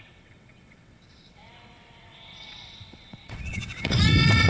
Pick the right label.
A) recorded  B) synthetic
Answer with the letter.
B